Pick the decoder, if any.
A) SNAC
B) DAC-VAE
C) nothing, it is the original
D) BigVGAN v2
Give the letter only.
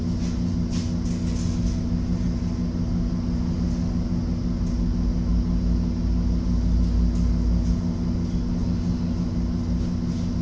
C